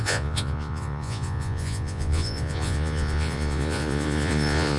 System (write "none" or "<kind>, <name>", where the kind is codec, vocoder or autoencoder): vocoder, Vocos